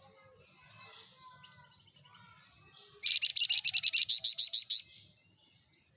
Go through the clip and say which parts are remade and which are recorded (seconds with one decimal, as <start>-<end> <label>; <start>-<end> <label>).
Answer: 0.0-6.0 recorded